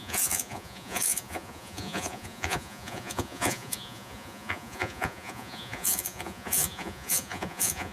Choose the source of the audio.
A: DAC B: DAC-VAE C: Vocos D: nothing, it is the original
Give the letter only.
C